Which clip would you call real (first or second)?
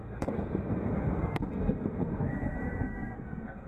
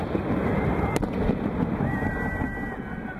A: second